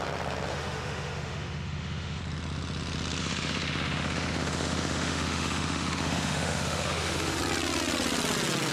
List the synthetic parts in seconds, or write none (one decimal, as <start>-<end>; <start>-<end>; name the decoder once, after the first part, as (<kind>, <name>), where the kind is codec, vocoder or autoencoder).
0.5-2.2 (autoencoder, DAC-VAE); 3.2-7.4